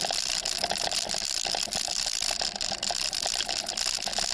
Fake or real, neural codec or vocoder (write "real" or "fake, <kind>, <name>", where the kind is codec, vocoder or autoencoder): real